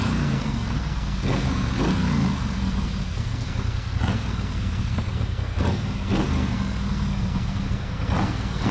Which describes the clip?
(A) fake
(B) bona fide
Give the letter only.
A